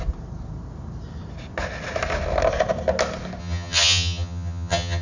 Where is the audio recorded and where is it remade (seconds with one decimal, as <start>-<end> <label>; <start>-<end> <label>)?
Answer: 0.0-3.4 recorded; 3.4-5.0 remade